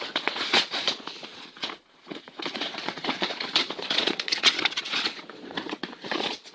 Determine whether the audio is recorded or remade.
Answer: remade